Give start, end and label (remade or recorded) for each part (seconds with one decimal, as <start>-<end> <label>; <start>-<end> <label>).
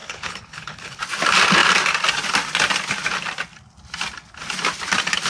0.0-1.0 remade; 1.0-5.3 recorded